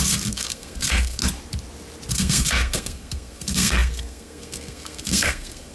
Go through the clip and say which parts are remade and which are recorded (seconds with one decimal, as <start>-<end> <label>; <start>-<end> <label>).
0.0-1.2 remade; 1.2-2.1 recorded; 2.1-5.7 remade